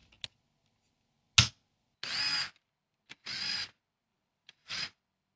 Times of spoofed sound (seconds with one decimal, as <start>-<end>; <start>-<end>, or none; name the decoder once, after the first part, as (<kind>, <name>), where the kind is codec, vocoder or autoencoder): 4.1-4.8 (vocoder, BigVGAN v2)